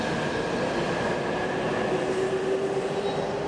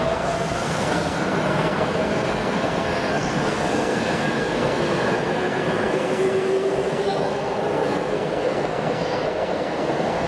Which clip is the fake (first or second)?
second